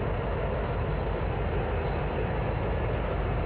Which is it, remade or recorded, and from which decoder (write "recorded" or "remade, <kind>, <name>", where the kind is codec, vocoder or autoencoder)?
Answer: recorded